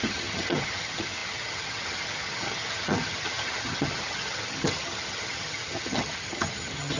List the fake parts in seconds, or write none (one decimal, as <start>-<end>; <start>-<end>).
0.0-7.0